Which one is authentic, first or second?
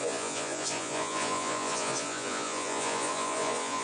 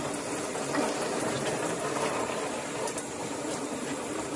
second